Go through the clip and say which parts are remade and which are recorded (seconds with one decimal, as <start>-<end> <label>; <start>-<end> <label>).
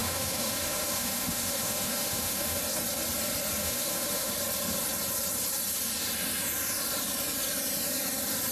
0.0-2.6 remade; 2.6-3.6 recorded; 3.6-4.3 remade; 4.3-8.5 recorded